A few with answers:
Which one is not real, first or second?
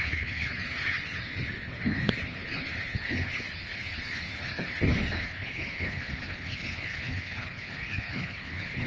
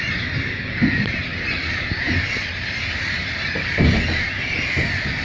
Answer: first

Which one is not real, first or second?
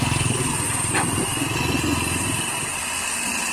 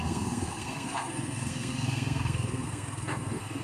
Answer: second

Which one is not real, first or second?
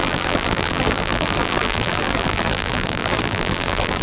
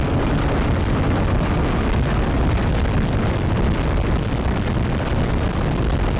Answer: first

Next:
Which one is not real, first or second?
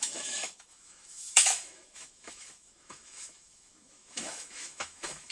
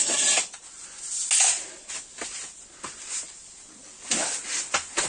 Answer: first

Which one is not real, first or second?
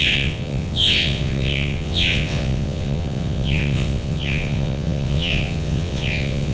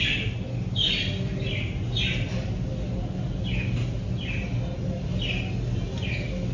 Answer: first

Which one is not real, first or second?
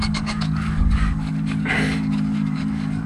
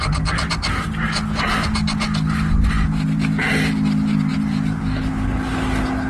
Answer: first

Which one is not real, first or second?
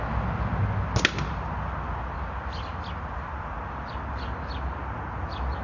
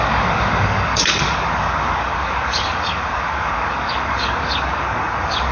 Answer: second